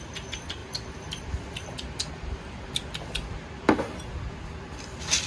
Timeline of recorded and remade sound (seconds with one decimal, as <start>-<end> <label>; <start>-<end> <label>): 0.0-5.3 remade